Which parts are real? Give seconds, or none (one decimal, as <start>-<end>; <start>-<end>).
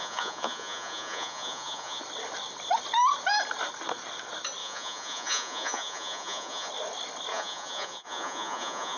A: 2.0-4.6; 6.7-7.3